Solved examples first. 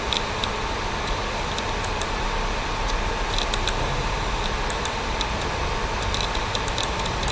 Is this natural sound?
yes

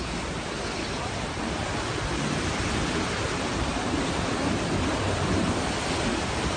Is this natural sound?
yes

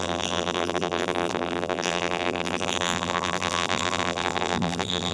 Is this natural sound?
no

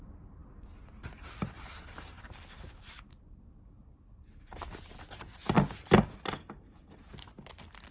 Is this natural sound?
yes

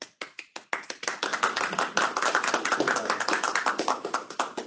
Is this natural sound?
yes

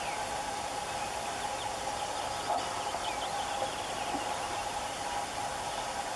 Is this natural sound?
yes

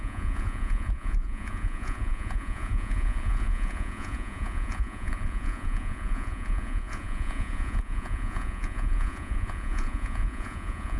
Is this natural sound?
no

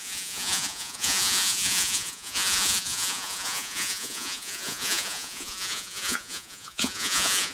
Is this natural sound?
no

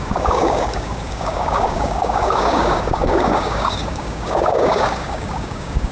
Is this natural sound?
no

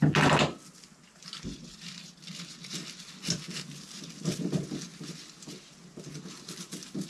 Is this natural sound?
yes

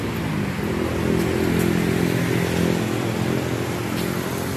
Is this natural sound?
yes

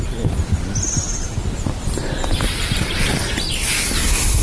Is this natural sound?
yes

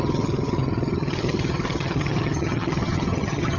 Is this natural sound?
no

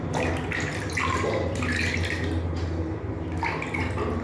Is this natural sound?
yes